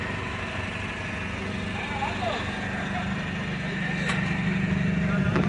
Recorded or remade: recorded